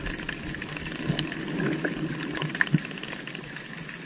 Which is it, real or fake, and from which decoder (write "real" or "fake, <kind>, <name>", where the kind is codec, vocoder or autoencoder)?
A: real